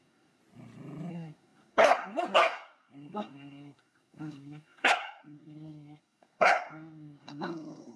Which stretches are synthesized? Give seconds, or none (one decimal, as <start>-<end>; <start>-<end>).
0.0-0.4; 1.1-8.0